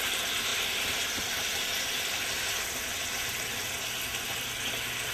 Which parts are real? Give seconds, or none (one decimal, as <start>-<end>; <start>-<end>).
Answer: 0.0-5.1